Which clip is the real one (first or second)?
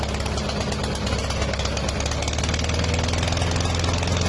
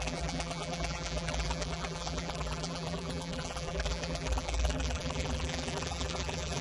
first